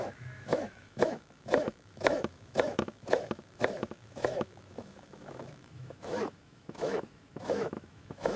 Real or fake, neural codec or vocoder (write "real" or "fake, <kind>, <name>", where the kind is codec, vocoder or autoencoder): fake, autoencoder, DAC-VAE